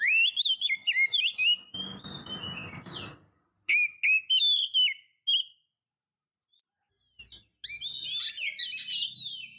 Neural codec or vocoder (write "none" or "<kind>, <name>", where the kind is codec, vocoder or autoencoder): none